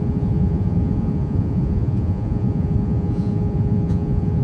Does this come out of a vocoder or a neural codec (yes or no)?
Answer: yes